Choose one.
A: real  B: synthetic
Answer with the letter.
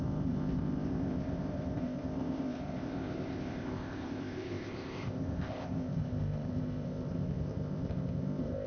B